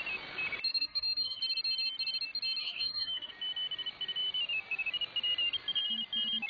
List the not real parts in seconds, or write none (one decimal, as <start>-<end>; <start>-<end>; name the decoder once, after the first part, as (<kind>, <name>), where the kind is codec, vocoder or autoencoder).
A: 0.7-1.4 (autoencoder, DAC-VAE); 2.6-3.3